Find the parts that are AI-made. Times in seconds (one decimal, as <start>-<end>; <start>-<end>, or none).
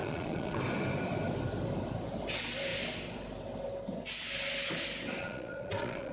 0.0-0.6; 5.2-6.1